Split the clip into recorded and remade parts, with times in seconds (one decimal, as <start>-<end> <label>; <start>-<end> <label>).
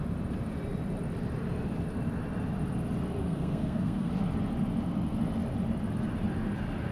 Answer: 0.0-3.2 recorded; 3.2-4.1 remade; 4.1-6.9 recorded